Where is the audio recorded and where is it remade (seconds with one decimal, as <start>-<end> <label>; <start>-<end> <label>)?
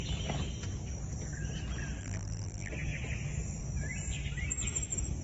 0.0-2.0 recorded; 2.0-2.7 remade; 2.7-5.2 recorded